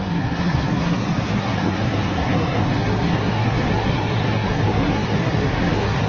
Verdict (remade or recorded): remade